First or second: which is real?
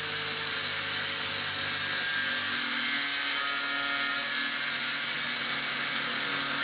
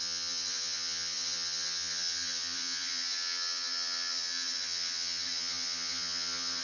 first